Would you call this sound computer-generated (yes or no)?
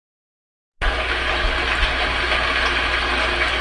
no